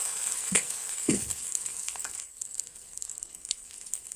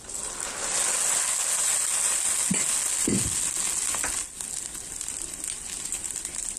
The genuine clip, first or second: second